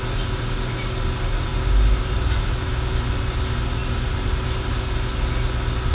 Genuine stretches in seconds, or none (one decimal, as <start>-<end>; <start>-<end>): 0.0-5.9